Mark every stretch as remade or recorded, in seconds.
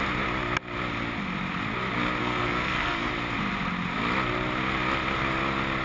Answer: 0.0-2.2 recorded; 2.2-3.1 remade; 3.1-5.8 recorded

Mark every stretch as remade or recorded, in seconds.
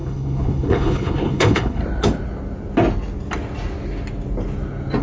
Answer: 0.0-1.8 remade; 1.8-5.0 recorded